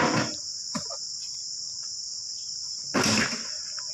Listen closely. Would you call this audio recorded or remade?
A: recorded